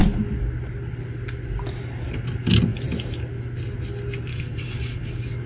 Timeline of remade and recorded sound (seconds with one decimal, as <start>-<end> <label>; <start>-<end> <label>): 0.0-4.3 recorded; 4.3-5.5 remade